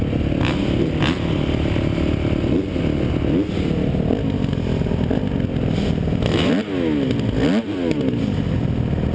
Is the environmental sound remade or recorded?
recorded